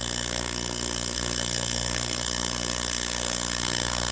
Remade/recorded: remade